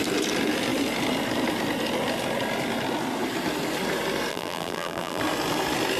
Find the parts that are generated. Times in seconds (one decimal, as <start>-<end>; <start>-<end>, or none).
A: 4.3-5.2